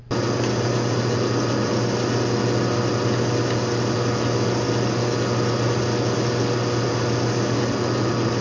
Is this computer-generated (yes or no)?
no